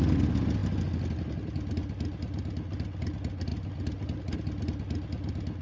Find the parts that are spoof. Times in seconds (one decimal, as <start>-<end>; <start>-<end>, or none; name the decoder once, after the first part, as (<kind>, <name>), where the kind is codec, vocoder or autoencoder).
none